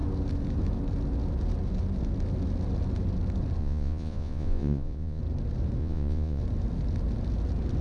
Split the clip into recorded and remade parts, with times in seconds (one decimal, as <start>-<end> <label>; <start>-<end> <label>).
0.0-3.6 recorded; 3.6-5.2 remade; 5.2-5.8 recorded; 5.8-6.4 remade; 6.4-7.8 recorded